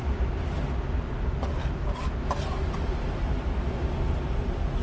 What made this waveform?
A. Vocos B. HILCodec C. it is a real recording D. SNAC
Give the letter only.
C